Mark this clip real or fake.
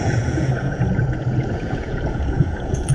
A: fake